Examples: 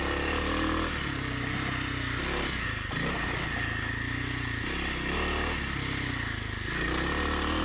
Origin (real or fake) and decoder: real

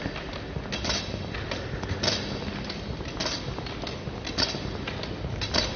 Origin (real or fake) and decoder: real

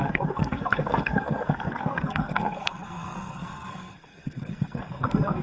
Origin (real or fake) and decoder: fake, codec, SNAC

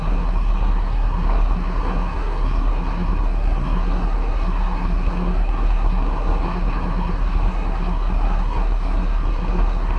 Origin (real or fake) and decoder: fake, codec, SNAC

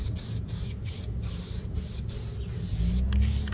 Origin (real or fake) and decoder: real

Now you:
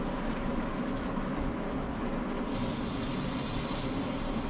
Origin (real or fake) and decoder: real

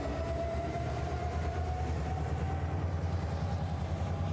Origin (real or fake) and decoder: fake, vocoder, BigVGAN v2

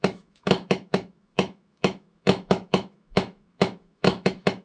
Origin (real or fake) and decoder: fake, autoencoder, DAC-VAE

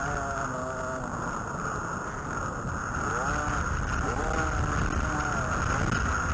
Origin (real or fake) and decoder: real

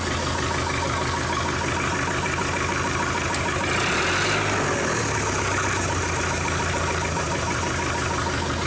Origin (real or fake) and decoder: real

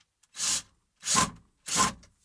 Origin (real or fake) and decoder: real